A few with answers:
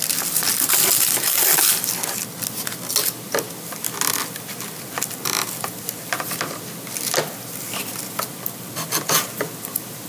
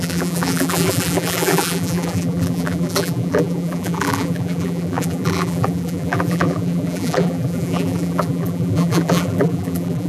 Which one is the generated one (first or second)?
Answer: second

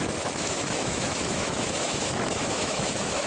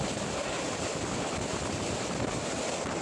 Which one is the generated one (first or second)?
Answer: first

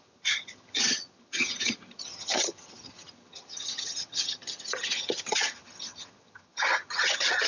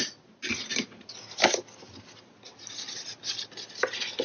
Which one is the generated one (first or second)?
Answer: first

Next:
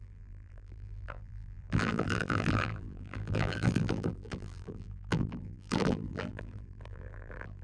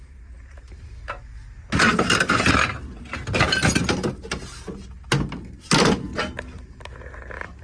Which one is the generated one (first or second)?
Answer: first